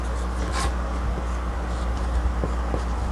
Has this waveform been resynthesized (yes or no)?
no